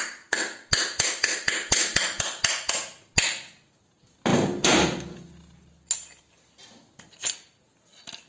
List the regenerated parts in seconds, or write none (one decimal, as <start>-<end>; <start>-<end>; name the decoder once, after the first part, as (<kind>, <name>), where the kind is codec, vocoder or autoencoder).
none